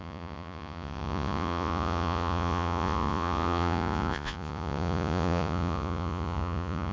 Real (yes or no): no